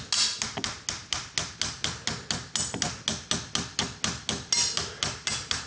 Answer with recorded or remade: recorded